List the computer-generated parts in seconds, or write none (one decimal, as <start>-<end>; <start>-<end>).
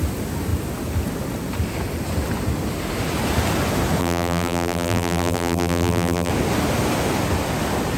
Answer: 4.0-6.3